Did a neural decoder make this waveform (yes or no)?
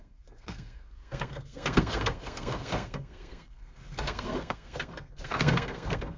yes